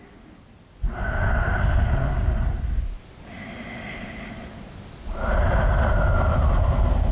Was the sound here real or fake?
real